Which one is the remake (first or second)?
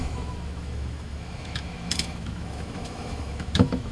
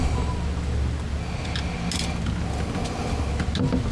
first